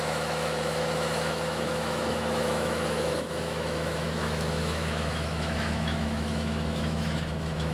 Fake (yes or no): yes